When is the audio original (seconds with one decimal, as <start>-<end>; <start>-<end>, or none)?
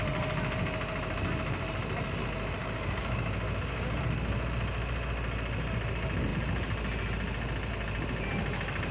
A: 0.0-2.6; 4.0-8.9